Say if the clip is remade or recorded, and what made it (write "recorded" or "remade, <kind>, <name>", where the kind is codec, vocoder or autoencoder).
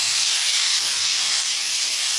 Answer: remade, codec, DAC